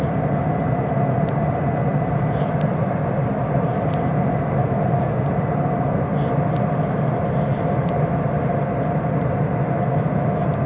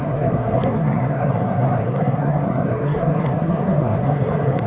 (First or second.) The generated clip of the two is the second